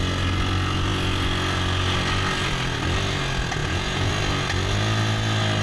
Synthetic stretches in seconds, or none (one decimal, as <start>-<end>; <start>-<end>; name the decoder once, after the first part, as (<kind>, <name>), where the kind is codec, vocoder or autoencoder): 3.6-4.1 (vocoder, Vocos)